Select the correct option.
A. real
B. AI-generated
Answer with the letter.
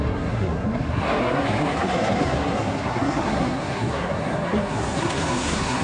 B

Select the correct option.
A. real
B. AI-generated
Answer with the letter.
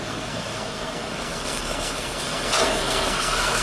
B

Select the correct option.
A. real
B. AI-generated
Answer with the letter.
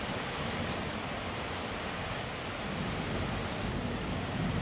A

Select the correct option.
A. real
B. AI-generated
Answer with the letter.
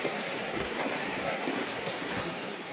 B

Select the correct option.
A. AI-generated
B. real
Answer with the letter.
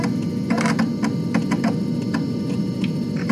B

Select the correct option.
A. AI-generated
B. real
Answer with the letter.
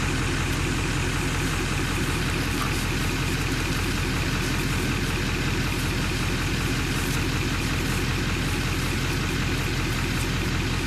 B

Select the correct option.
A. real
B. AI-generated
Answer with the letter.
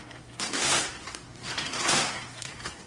B